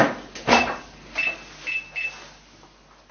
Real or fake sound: real